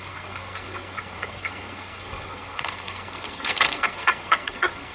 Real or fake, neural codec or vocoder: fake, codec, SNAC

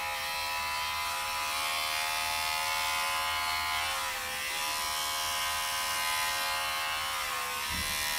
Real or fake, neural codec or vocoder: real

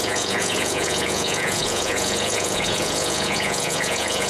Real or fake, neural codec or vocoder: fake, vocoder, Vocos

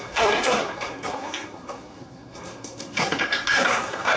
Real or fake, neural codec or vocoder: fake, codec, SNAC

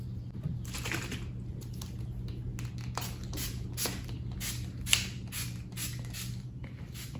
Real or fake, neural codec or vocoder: real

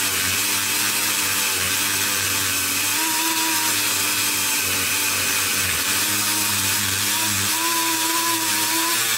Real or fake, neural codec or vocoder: real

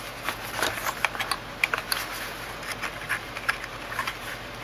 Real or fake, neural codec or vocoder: real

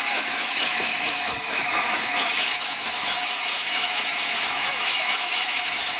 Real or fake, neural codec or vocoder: fake, autoencoder, DAC-VAE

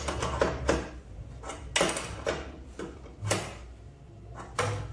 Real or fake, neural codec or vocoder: real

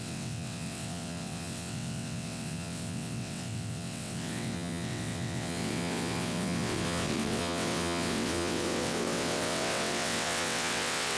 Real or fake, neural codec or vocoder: fake, vocoder, WaveNeXt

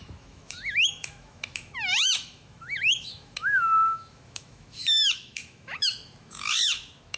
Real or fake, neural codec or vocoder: fake, autoencoder, DAC-VAE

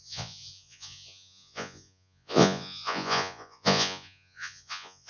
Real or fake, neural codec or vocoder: fake, vocoder, Vocos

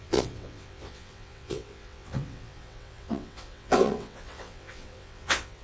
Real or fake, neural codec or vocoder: fake, vocoder, WaveNeXt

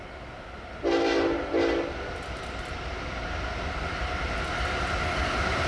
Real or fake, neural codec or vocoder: real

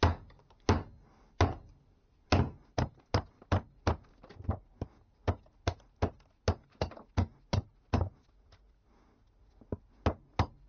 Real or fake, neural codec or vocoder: real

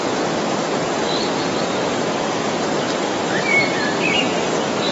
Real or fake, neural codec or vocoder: fake, vocoder, BigVGAN v2